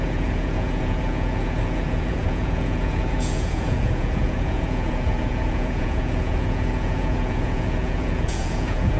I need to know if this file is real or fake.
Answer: fake